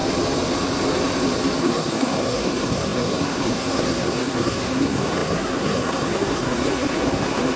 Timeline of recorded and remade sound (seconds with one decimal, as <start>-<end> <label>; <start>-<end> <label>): 0.0-1.6 recorded; 1.6-7.6 remade